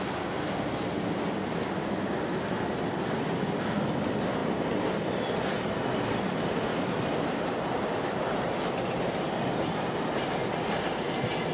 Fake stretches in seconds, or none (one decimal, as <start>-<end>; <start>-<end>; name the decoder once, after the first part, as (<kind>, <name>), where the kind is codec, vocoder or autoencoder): none

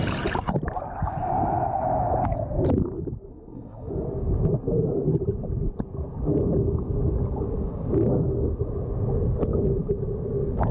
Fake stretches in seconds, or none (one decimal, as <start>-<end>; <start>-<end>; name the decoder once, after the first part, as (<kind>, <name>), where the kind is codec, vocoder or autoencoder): 3.3-3.9 (codec, SNAC)